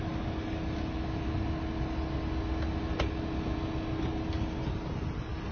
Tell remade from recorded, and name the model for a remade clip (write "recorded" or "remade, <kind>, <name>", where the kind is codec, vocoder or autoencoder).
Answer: recorded